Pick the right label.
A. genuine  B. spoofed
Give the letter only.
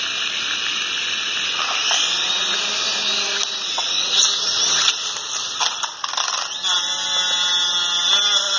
A